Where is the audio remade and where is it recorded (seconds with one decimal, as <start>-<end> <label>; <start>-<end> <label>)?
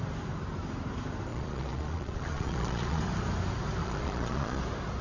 0.0-1.3 recorded; 1.3-3.0 remade; 3.0-3.8 recorded; 3.8-4.6 remade; 4.6-5.0 recorded